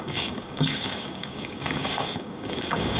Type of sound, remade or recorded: remade